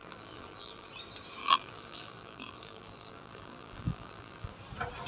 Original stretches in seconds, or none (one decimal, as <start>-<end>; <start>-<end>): 0.9-1.4; 4.5-5.1